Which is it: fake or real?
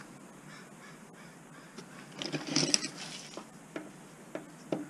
real